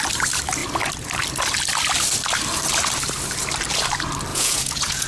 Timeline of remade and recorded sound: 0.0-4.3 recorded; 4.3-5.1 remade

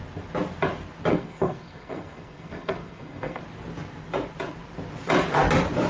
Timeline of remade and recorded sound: 0.0-1.1 recorded; 1.1-3.4 remade; 3.4-5.9 recorded

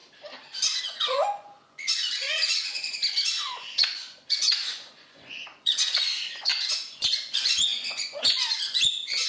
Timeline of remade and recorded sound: 0.0-0.8 recorded; 0.8-3.0 remade; 3.0-3.6 recorded; 3.6-9.3 remade

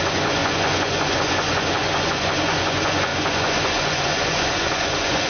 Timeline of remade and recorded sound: 0.0-5.3 remade

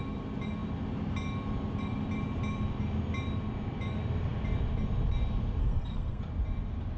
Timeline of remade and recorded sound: 0.0-5.6 recorded; 5.6-6.2 remade; 6.2-7.0 recorded

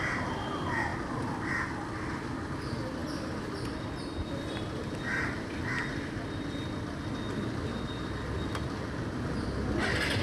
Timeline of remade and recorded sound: 0.0-10.2 recorded